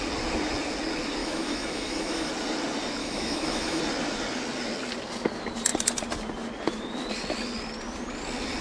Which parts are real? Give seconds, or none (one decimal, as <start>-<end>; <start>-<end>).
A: 0.0-1.2; 2.3-3.0; 3.8-8.6